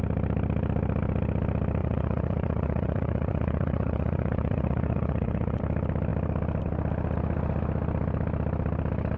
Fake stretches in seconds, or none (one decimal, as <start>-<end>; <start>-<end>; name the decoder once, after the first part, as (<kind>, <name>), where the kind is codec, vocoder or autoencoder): 1.8-5.6 (vocoder, Vocos)